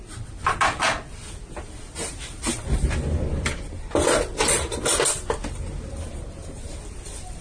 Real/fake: real